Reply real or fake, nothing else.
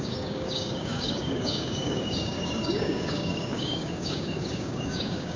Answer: fake